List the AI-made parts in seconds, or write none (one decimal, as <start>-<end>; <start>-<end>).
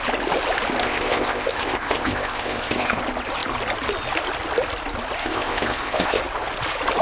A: 0.8-3.0; 5.2-6.2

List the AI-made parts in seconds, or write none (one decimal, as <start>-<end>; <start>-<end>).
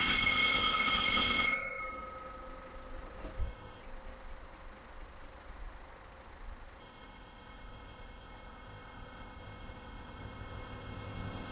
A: 0.0-1.8; 3.4-3.8; 6.8-11.5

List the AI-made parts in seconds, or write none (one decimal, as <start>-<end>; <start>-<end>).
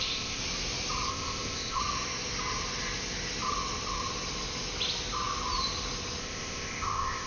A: 0.0-0.4; 1.1-1.8; 6.2-7.3